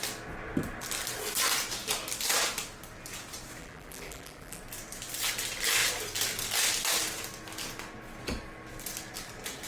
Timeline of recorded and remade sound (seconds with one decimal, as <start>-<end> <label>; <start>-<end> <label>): 0.0-3.6 recorded; 3.6-4.6 remade; 4.6-9.7 recorded